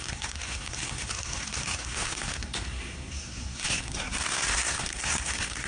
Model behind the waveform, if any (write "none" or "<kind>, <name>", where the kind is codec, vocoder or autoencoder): codec, SNAC